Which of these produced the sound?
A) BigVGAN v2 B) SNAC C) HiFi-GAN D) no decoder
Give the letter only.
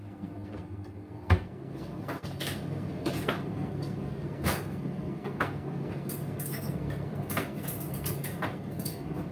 B